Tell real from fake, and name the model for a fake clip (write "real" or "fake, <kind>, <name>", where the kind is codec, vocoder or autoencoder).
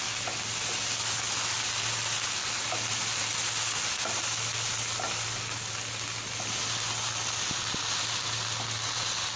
real